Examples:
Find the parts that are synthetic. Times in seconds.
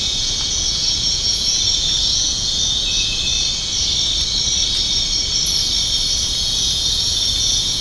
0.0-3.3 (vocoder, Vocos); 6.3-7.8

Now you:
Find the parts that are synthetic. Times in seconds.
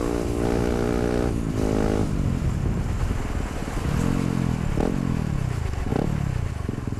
3.6-4.6 (vocoder, BigVGAN v2)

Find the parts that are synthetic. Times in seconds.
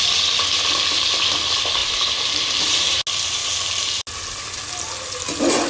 1.8-3.0 (vocoder, BigVGAN v2); 3.4-4.4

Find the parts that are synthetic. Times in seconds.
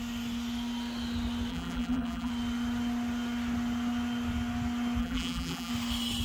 1.5-2.3 (vocoder, BigVGAN v2); 5.0-5.7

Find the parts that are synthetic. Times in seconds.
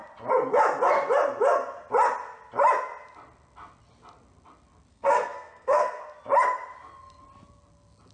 4.9-6.0 (codec, SNAC)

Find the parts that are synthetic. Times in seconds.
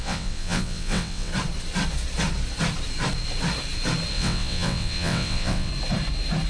0.0-1.3 (vocoder, WaveNeXt); 4.1-5.7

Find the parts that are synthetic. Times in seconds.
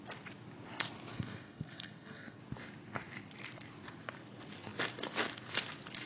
1.1-2.4 (codec, SNAC)